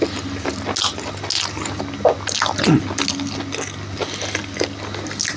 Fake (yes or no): no